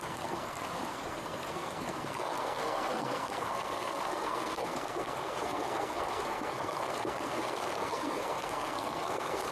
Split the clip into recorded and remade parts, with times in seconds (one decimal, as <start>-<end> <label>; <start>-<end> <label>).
0.0-9.5 remade